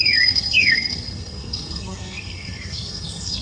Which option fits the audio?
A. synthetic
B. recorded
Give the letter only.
A